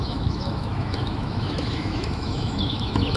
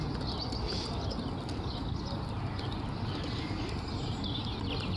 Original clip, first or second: second